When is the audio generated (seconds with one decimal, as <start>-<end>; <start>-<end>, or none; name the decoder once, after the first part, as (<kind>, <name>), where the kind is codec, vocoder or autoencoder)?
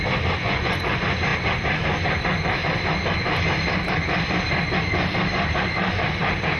0.4-0.9 (vocoder, Vocos)